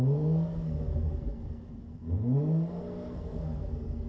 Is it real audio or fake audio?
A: fake